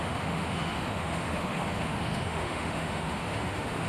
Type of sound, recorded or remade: remade